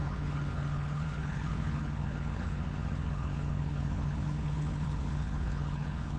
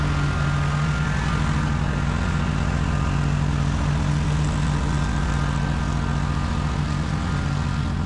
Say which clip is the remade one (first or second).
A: first